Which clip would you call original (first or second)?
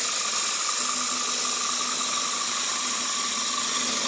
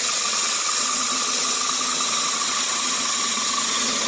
first